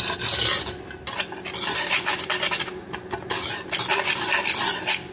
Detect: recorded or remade recorded